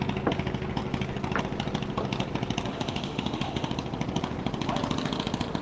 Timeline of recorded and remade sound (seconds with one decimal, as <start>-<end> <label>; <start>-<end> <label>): 0.0-2.7 recorded; 2.7-3.7 remade; 3.7-5.6 recorded